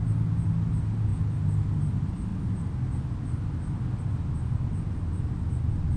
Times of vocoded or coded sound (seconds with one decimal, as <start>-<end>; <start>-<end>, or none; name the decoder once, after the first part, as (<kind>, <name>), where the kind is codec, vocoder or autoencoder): none